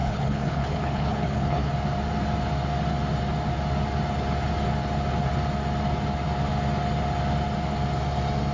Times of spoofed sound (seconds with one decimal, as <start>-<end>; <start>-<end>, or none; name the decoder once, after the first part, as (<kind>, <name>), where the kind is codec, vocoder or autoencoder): 0.0-1.7 (codec, HILCodec)